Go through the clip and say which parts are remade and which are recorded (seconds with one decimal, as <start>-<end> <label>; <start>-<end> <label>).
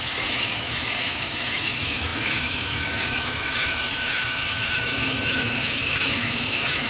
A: 0.0-6.9 remade